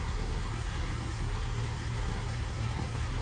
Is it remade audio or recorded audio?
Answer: remade